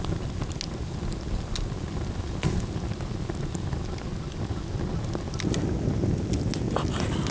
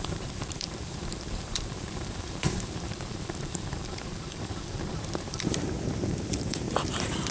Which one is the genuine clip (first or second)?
first